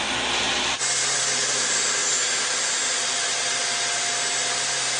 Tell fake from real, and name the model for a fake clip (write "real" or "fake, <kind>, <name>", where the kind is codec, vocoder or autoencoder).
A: real